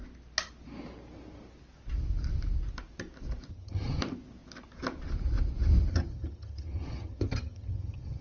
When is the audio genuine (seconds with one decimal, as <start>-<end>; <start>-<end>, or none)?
0.0-3.5; 4.0-5.9